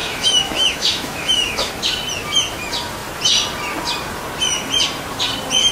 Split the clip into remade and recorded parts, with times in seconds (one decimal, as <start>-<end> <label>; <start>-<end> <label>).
0.0-1.7 remade; 1.7-5.7 recorded

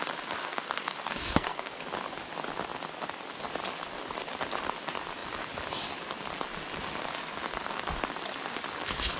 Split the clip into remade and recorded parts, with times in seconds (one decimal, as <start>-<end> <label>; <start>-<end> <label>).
0.0-0.4 recorded; 0.4-1.8 remade; 1.8-9.2 recorded

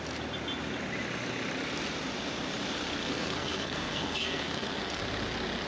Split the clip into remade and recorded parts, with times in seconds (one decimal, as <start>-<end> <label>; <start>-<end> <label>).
0.0-3.0 recorded; 3.0-5.0 remade; 5.0-5.7 recorded

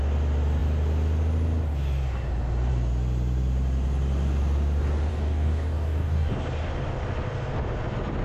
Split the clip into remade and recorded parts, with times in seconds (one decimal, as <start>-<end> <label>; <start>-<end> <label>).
0.0-5.1 recorded; 5.1-6.3 remade; 6.3-8.2 recorded